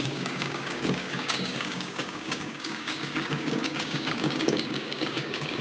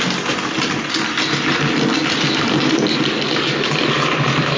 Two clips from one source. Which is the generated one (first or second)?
first